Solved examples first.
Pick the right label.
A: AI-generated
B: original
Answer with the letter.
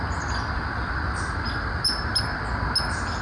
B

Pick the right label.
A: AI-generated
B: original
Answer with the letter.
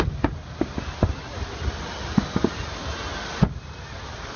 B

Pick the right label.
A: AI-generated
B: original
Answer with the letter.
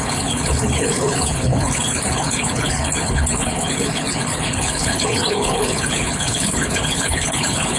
A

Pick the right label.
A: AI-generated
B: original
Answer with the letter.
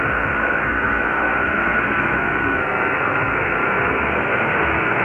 A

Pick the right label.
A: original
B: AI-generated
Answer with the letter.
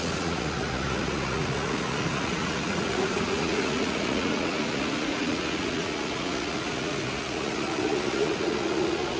B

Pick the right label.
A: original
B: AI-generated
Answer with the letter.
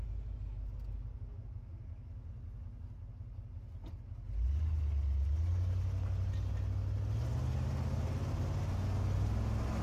A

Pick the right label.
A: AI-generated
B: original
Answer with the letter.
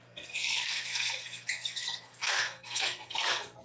A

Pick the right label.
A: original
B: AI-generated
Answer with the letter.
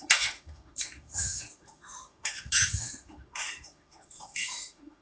B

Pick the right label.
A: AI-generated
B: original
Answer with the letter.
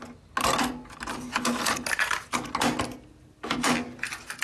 B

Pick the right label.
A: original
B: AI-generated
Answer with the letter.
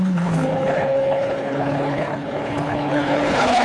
B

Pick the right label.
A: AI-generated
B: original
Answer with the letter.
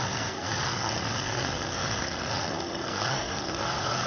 A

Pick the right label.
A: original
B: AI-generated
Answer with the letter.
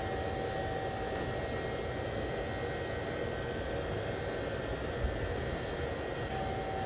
A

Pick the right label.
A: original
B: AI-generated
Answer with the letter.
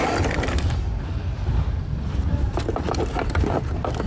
A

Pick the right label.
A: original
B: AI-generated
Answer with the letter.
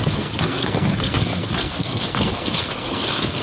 B